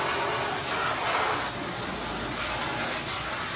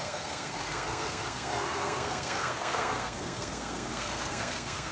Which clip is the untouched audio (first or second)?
first